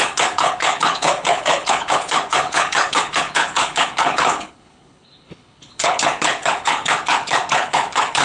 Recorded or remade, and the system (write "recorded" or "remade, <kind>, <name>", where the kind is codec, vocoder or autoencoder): remade, codec, HILCodec